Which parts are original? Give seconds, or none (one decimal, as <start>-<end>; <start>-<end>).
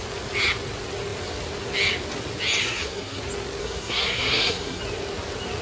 0.0-2.6; 3.2-3.6; 4.8-5.6